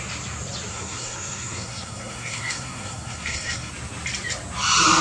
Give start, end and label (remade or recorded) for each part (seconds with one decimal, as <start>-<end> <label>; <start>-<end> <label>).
0.0-0.7 recorded; 0.7-3.7 remade; 3.7-5.0 recorded